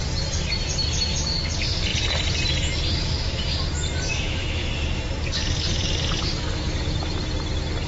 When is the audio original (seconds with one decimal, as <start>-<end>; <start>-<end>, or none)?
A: 0.0-4.1; 4.7-7.9